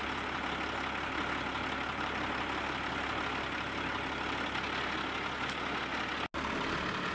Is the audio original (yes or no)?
yes